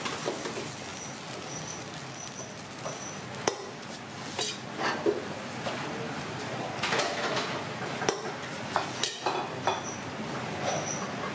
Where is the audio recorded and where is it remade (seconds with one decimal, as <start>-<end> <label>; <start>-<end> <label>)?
0.0-11.3 recorded